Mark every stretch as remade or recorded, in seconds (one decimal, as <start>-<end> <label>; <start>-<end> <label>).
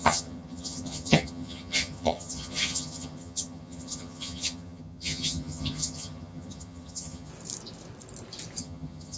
0.0-7.3 remade; 7.3-8.6 recorded; 8.6-9.2 remade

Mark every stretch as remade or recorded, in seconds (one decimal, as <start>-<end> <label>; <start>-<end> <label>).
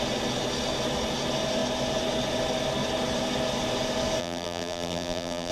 0.0-4.2 recorded; 4.2-5.5 remade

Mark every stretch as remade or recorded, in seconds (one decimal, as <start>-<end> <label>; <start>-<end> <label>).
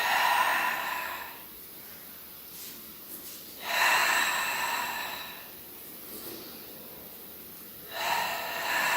0.0-9.0 recorded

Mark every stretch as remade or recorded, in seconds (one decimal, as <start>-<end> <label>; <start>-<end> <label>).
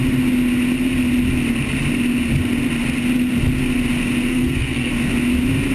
0.0-4.3 recorded; 4.3-4.9 remade; 4.9-5.7 recorded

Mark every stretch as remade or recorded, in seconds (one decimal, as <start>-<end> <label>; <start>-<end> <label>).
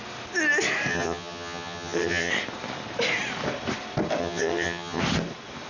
0.0-0.9 recorded; 0.9-2.3 remade; 2.3-4.2 recorded; 4.2-5.0 remade; 5.0-5.7 recorded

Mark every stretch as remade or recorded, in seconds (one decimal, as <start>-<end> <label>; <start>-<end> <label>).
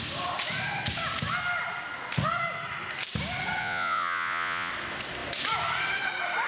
0.0-3.6 recorded; 3.6-4.7 remade; 4.7-6.5 recorded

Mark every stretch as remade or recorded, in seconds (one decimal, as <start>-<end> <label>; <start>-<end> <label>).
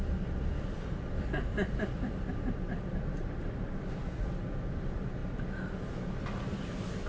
0.0-1.5 recorded; 1.5-2.3 remade; 2.3-3.4 recorded; 3.4-4.0 remade; 4.0-7.1 recorded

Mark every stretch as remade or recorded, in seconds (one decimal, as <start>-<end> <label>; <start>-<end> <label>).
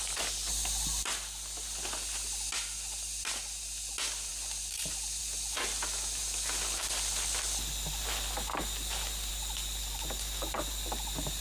0.0-11.4 recorded